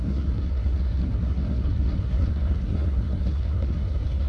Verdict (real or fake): fake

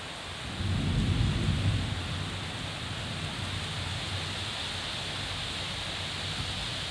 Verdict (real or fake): real